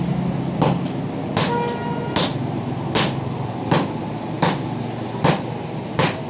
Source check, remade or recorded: recorded